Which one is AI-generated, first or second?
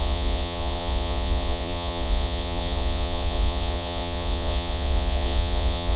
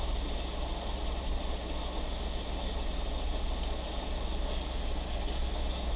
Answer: first